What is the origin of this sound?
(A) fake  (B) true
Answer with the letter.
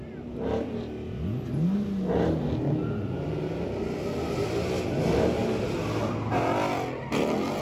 B